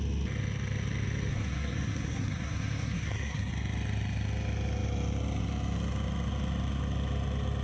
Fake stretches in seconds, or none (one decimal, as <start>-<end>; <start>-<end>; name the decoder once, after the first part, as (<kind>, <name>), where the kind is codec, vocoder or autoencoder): 1.3-3.5 (codec, SNAC)